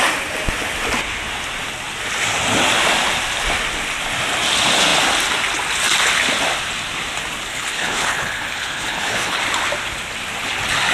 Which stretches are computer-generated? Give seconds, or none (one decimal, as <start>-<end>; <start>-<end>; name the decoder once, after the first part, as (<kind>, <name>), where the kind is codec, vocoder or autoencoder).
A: 7.5-9.4 (codec, HILCodec)

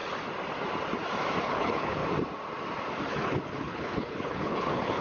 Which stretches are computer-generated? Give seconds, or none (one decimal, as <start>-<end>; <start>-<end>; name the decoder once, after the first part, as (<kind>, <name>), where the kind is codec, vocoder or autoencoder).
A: 1.4-2.0 (codec, HILCodec); 3.1-5.0

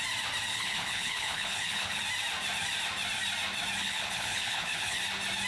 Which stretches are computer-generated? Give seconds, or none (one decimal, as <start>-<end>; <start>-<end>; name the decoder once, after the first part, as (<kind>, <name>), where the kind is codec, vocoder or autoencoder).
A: 0.5-2.0 (codec, HILCodec); 3.8-5.0

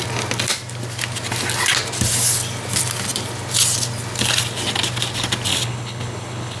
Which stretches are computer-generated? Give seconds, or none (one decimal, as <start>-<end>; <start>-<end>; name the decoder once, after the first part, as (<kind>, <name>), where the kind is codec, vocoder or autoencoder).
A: 5.5-6.6 (codec, HILCodec)

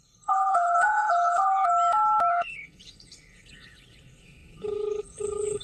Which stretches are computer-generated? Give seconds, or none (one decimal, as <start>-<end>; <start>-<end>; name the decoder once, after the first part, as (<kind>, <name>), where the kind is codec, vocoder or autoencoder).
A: 0.0-1.7 (codec, HILCodec); 2.3-5.6